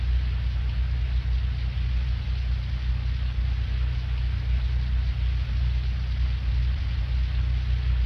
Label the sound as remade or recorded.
recorded